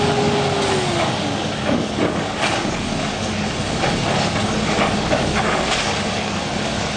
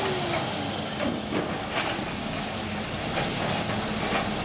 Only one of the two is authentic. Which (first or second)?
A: second